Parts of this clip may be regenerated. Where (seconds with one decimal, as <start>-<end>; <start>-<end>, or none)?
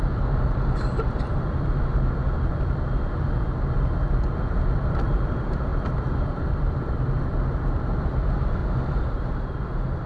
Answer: 0.0-1.9; 2.5-8.6; 9.4-10.1